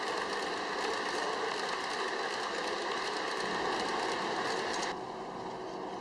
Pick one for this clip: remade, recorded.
recorded